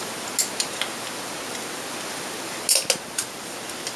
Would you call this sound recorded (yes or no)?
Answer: yes